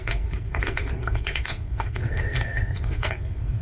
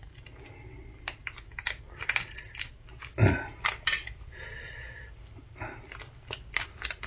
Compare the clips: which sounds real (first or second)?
second